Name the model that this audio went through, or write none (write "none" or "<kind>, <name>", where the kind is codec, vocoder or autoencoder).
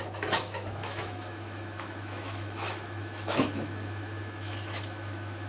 autoencoder, DAC-VAE